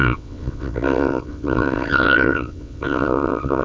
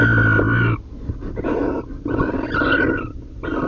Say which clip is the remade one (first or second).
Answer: first